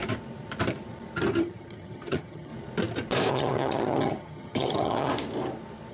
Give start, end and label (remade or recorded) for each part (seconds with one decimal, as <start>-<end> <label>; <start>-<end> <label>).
0.0-1.4 recorded; 1.4-2.5 remade; 2.5-3.3 recorded; 3.3-5.1 remade; 5.1-5.9 recorded